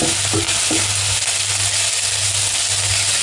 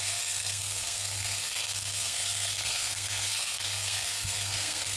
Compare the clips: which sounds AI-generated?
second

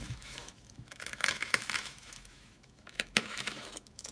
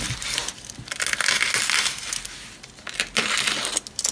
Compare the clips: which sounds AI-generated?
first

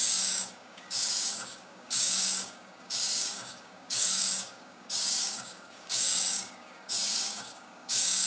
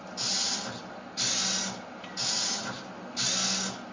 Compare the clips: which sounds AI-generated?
first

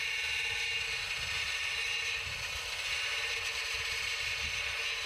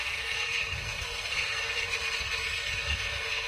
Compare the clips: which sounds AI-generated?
second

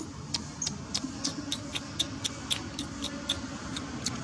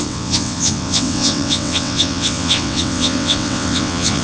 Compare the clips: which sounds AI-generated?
second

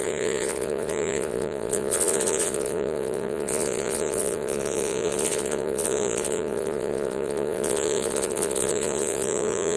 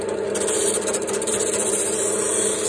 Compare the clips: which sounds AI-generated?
first